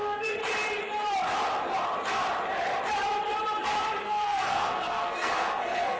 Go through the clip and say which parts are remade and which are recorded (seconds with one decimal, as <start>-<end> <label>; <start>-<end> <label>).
0.0-0.4 remade; 0.4-4.0 recorded; 4.0-6.0 remade